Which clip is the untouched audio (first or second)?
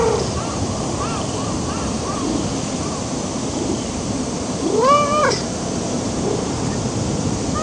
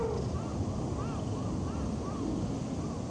second